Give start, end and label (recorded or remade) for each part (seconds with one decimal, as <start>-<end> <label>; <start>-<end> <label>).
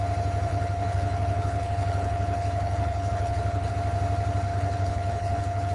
0.0-0.5 recorded; 0.5-3.7 remade; 3.7-4.5 recorded; 4.5-5.7 remade